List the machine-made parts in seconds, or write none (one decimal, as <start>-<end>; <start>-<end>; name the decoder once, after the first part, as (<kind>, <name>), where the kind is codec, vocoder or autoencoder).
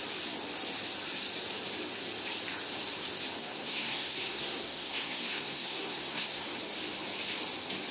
3.4-6.4 (codec, SNAC)